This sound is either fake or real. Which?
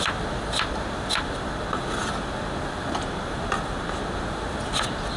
real